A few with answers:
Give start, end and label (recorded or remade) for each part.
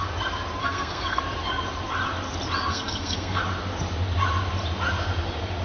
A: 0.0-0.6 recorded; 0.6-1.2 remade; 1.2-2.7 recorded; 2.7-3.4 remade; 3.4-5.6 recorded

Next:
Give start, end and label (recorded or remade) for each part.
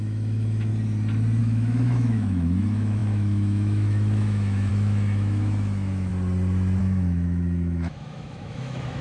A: 0.0-0.7 remade; 0.7-1.4 recorded; 1.4-6.1 remade; 6.1-6.8 recorded; 6.8-9.0 remade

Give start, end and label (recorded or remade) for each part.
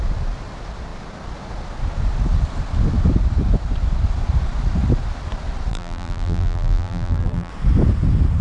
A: 0.0-5.7 recorded; 5.7-7.5 remade; 7.5-8.4 recorded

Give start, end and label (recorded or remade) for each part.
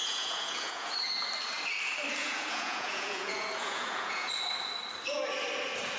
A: 0.0-0.9 remade; 0.9-2.2 recorded; 2.2-4.3 remade; 4.3-6.0 recorded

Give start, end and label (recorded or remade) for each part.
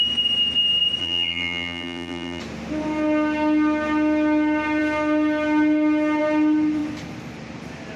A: 0.0-1.0 recorded; 1.0-2.4 remade; 2.4-8.0 recorded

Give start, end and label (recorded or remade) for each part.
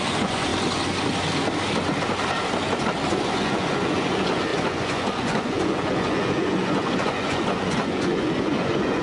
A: 0.0-0.5 remade; 0.5-3.1 recorded; 3.1-9.0 remade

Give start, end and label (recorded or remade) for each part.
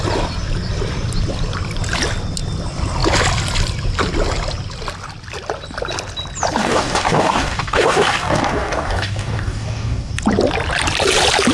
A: 0.0-6.6 recorded; 6.6-10.1 remade; 10.1-11.5 recorded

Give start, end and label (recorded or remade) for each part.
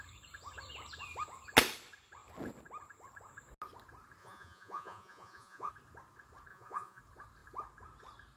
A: 0.0-4.2 recorded; 4.2-5.7 remade; 5.7-6.5 recorded; 6.5-7.0 remade; 7.0-8.4 recorded